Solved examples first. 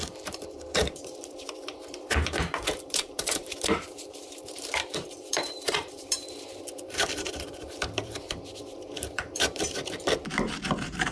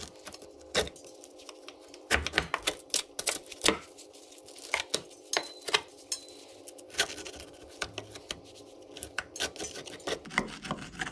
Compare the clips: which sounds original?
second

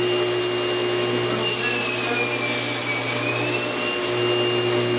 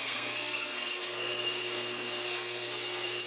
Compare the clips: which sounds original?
first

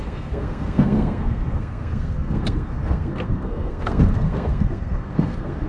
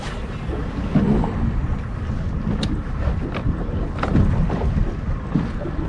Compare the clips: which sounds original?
second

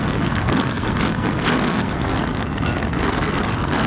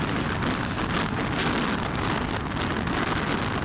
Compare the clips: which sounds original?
second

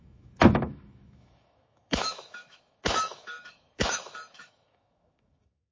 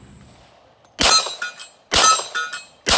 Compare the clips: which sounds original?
second